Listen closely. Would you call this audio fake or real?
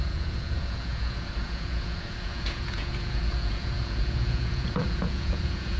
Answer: fake